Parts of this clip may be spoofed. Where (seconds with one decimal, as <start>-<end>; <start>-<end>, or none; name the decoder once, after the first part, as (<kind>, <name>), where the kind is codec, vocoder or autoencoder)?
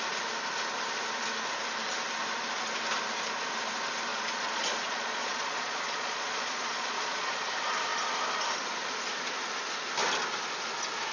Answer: 4.1-7.4 (vocoder, Vocos)